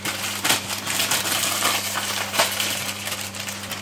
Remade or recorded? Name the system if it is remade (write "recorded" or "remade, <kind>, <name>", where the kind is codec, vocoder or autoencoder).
remade, vocoder, BigVGAN v2